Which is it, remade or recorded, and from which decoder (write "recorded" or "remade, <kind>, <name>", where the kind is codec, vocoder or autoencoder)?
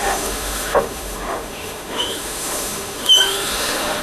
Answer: remade, autoencoder, DAC-VAE